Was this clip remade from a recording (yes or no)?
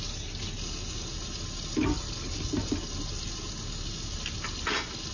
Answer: no